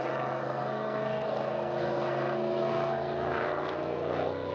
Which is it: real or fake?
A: fake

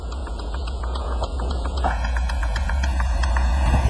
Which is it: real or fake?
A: fake